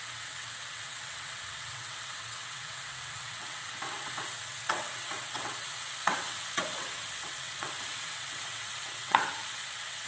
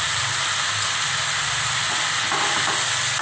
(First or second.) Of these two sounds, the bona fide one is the second